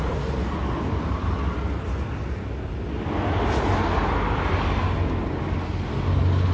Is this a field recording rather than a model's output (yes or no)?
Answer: yes